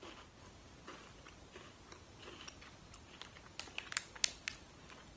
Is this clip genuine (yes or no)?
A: yes